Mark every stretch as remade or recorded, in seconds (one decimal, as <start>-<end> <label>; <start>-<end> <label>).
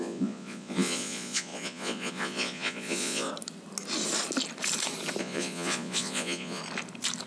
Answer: 0.0-3.3 remade; 3.3-5.2 recorded; 5.2-6.6 remade; 6.6-7.3 recorded